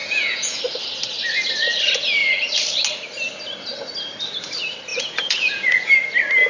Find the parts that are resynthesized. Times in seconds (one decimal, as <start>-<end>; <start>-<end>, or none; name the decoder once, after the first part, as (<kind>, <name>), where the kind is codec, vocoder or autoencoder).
0.0-0.6 (vocoder, Vocos); 4.9-5.9